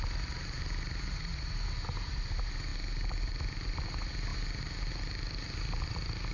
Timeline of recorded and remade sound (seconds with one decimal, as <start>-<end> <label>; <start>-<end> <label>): 0.0-6.3 recorded